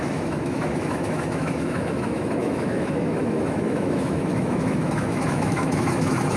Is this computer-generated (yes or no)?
yes